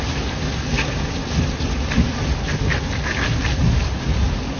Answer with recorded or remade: recorded